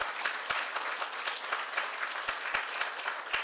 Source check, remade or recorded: recorded